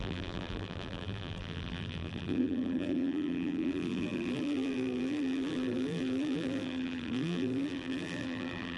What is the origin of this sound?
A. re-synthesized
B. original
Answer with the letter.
A